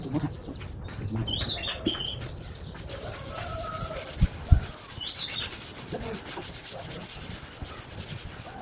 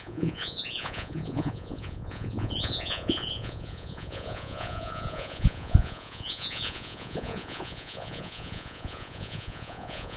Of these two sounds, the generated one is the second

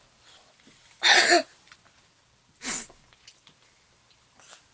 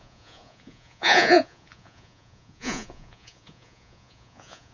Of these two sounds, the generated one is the second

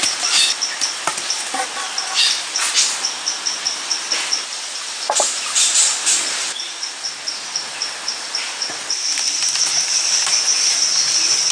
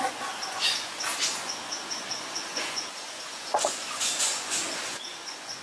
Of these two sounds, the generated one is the second